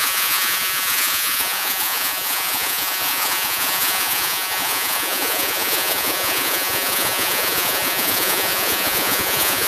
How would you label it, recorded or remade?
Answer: remade